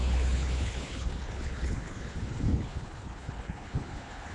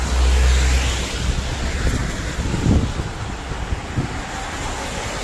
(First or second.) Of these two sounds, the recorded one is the second